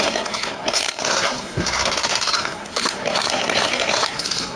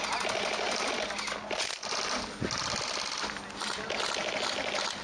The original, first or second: second